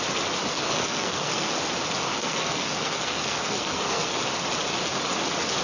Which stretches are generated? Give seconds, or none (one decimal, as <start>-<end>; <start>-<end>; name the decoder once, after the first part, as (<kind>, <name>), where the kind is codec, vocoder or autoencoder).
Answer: 0.5-1.5 (codec, SNAC); 2.0-4.2